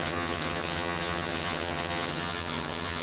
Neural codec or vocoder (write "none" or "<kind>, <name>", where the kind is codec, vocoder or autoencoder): vocoder, HiFi-GAN